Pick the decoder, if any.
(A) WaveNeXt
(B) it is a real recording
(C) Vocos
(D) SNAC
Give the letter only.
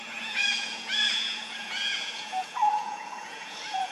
C